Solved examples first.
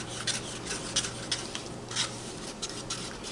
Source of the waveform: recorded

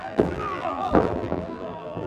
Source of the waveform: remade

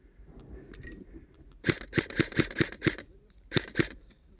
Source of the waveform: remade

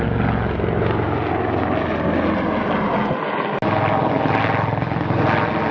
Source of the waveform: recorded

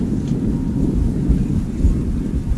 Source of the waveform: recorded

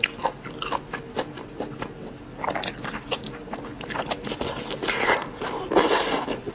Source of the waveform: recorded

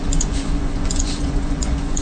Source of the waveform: remade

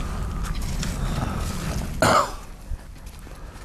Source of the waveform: recorded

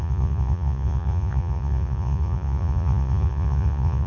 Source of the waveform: remade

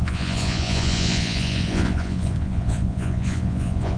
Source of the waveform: remade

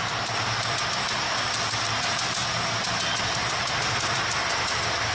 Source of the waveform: recorded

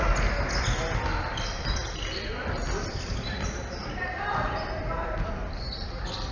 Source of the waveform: recorded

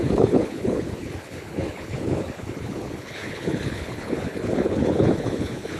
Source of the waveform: remade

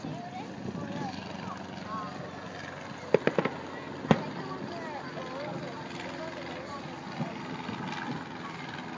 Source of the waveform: recorded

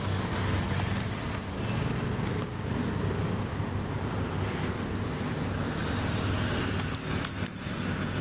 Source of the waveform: recorded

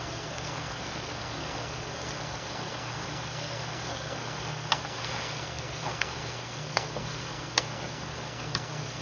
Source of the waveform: remade